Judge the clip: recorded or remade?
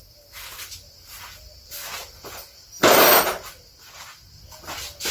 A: recorded